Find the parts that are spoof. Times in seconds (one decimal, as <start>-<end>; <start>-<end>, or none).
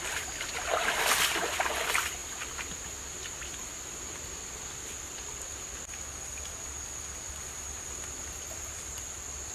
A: none